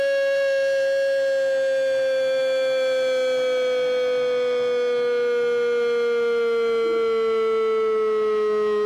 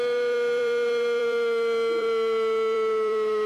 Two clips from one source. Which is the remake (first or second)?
second